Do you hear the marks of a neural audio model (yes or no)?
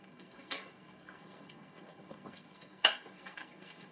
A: yes